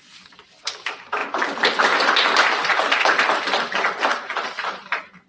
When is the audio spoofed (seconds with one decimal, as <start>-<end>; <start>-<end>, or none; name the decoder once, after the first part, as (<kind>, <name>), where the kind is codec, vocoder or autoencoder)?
none